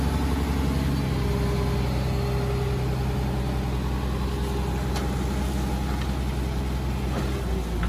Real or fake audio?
real